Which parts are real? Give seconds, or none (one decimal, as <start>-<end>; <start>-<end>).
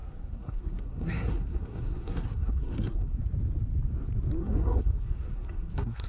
3.2-4.4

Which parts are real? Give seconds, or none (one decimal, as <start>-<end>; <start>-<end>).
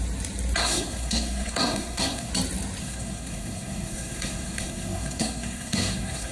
0.0-0.6; 2.3-2.8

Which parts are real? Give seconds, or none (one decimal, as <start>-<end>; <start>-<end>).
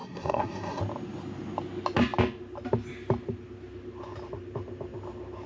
0.8-5.5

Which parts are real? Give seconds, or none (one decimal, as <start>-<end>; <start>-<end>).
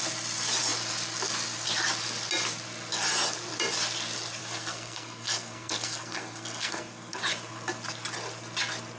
0.0-4.4; 7.2-9.0